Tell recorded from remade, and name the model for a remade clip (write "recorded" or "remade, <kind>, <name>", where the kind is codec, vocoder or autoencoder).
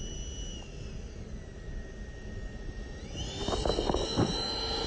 recorded